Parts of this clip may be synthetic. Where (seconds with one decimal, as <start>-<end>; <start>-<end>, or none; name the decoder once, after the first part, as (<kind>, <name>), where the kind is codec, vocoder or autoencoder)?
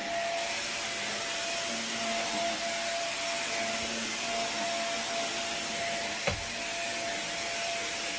none